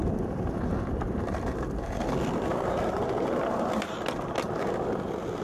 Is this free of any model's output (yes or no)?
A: yes